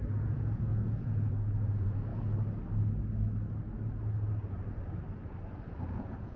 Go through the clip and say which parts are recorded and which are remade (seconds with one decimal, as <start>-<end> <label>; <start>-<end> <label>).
0.0-2.1 remade; 2.1-5.9 recorded; 5.9-6.4 remade